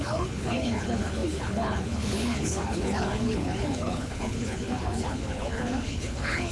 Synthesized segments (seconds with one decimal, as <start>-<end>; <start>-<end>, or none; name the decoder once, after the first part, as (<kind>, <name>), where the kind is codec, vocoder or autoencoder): 0.0-6.5 (codec, HILCodec)